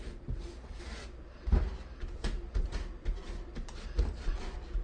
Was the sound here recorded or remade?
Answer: recorded